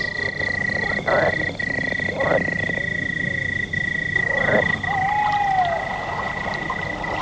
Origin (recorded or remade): recorded